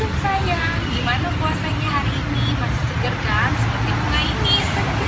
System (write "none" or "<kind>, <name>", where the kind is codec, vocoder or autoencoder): none